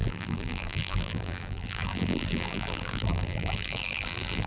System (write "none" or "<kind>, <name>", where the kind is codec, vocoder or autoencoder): vocoder, BigVGAN v2